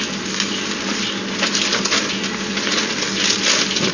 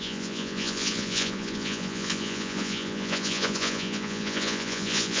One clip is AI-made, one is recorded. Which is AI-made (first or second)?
second